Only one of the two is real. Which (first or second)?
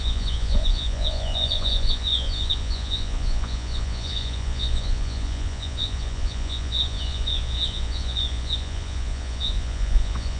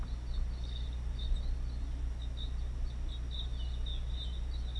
second